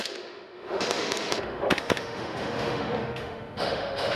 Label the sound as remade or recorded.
remade